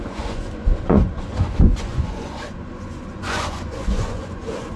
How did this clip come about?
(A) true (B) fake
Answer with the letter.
B